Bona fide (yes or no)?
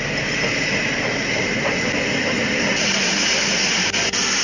yes